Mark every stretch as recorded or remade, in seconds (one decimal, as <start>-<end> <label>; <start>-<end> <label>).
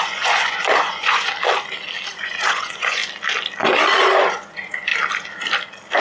0.0-1.3 remade; 1.3-2.1 recorded; 2.1-3.0 remade; 3.0-4.0 recorded; 4.0-4.9 remade; 4.9-6.0 recorded